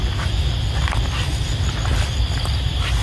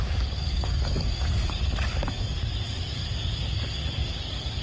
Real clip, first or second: first